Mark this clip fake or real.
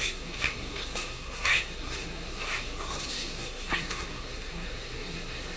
fake